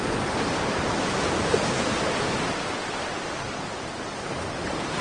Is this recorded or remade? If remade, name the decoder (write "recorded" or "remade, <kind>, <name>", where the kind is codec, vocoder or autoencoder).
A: remade, vocoder, BigVGAN v2